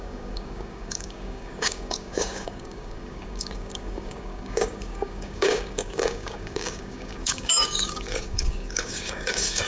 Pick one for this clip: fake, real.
fake